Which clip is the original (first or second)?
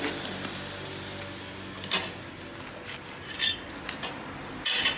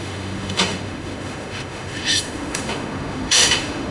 first